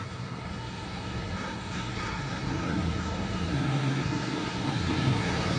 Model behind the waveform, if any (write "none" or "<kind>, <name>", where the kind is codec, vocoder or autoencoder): codec, SNAC